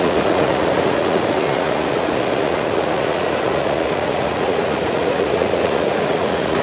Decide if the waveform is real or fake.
fake